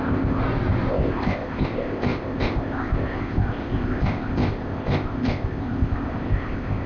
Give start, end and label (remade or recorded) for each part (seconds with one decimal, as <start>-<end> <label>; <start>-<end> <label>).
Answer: 0.0-0.4 remade; 0.4-0.9 recorded; 0.9-6.9 remade